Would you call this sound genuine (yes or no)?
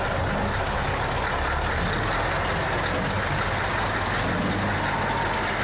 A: yes